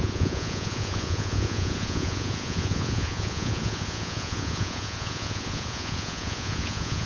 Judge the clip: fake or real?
fake